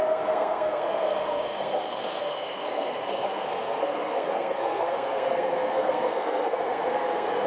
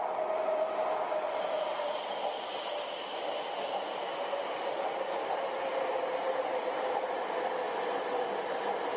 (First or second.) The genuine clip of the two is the second